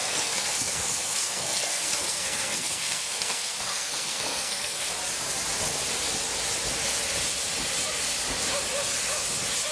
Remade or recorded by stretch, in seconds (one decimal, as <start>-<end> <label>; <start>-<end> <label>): 0.0-4.9 remade; 4.9-9.7 recorded